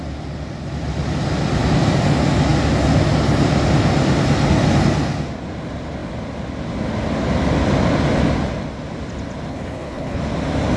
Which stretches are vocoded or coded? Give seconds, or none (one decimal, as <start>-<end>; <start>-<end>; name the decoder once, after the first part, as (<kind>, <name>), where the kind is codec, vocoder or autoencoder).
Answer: 9.5-10.2 (codec, HILCodec)